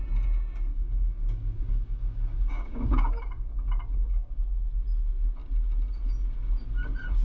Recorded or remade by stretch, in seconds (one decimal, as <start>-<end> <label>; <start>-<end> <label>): 0.0-0.7 recorded; 0.7-4.4 remade; 4.4-7.2 recorded